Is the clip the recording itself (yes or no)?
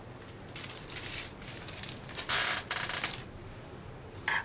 yes